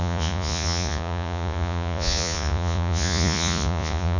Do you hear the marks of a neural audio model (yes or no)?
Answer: yes